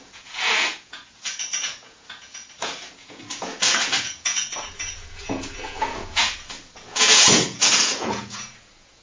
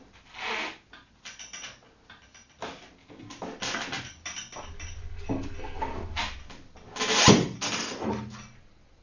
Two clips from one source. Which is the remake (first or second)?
first